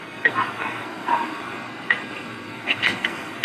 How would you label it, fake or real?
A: fake